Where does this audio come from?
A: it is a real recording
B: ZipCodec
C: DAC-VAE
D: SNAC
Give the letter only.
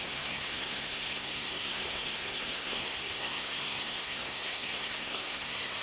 D